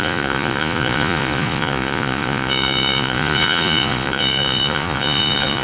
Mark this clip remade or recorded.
remade